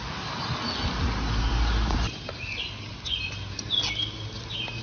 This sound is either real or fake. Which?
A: real